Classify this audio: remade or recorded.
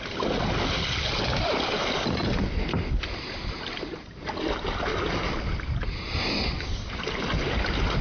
recorded